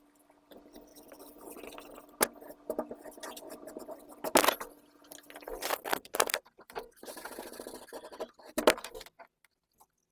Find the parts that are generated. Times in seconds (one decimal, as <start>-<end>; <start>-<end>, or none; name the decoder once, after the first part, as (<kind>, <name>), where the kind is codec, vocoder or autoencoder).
0.9-1.6 (vocoder, BigVGAN v2); 5.9-9.7